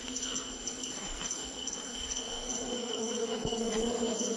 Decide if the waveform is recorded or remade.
remade